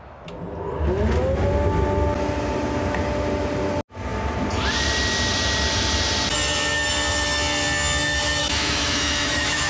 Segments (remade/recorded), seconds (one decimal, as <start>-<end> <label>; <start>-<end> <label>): 0.0-8.4 recorded; 8.4-9.7 remade